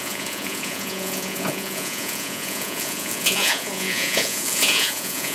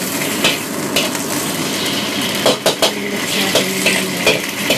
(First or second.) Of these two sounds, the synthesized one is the first